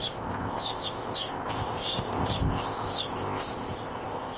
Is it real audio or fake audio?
fake